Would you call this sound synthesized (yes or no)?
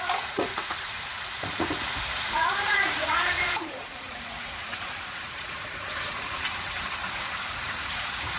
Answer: yes